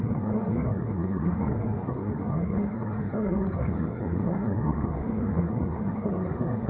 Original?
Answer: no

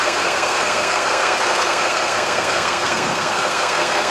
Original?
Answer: no